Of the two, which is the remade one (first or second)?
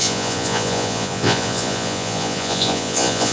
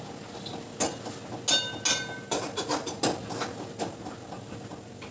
first